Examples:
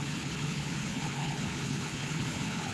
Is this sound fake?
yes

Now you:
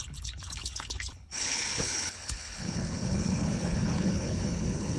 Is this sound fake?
yes